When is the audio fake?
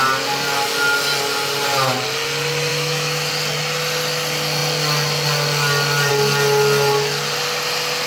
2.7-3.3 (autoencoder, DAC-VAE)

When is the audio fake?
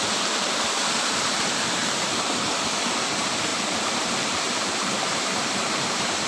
0.0-6.3 (vocoder, BigVGAN v2)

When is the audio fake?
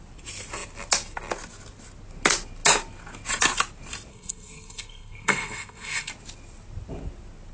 4.1-6.1 (codec, SNAC)